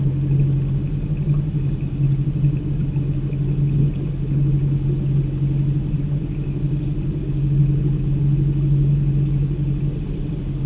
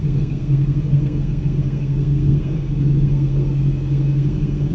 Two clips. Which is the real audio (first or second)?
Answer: first